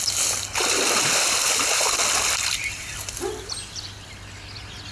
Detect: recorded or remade recorded